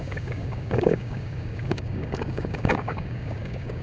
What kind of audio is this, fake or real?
fake